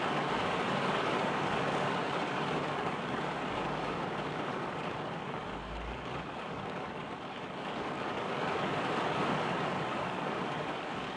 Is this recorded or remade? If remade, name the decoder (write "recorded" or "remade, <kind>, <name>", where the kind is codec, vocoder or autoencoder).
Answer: remade, codec, DAC